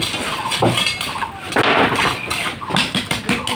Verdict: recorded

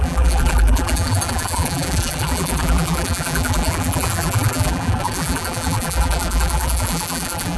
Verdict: remade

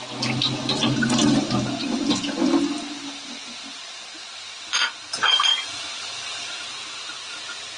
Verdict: recorded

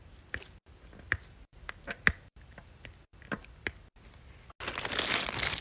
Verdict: recorded